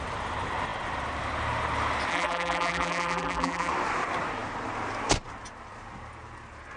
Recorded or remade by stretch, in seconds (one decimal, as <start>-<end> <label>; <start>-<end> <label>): 0.0-2.1 recorded; 2.1-3.7 remade; 3.7-6.8 recorded